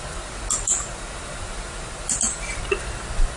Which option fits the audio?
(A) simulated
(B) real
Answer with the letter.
B